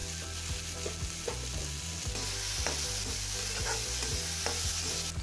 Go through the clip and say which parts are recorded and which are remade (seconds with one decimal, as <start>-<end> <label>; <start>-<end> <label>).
0.0-5.2 recorded